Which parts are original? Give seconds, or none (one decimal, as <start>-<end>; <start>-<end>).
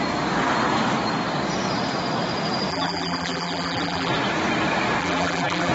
0.0-2.7; 4.1-5.0